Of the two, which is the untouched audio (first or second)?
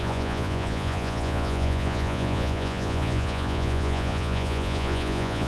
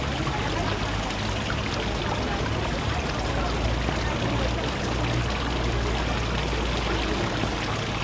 second